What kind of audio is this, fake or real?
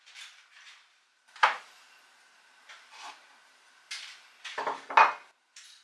real